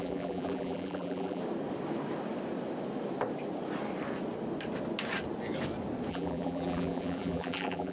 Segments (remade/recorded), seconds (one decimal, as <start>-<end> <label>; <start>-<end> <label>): 0.0-1.4 remade; 1.4-6.1 recorded; 6.1-7.9 remade